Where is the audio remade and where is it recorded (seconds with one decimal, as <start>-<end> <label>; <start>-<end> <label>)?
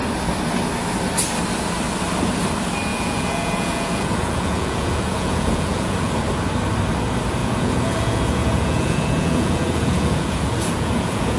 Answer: 0.0-2.9 recorded; 2.9-6.2 remade; 6.2-7.4 recorded; 7.4-11.4 remade